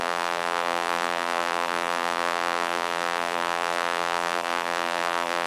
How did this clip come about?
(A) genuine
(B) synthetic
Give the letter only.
B